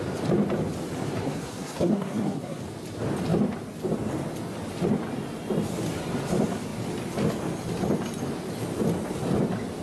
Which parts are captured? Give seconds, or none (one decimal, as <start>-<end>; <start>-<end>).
0.0-1.2; 2.6-9.8